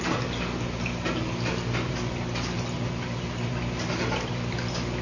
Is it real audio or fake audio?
real